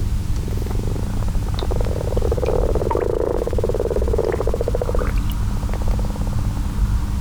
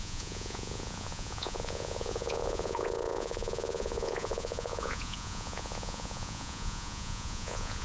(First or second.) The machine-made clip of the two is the second